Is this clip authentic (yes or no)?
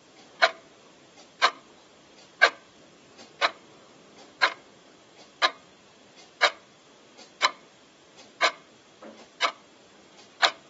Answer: yes